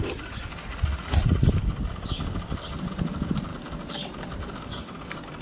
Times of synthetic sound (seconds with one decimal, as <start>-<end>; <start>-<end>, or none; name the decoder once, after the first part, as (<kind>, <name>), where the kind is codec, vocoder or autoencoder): 0.7-1.4 (vocoder, Vocos)